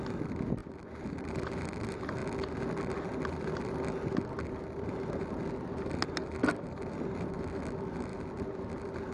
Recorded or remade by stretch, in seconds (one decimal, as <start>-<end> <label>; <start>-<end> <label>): 0.0-9.1 recorded